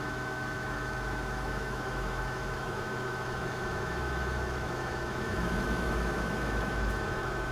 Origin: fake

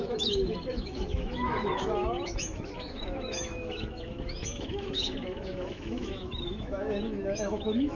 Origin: fake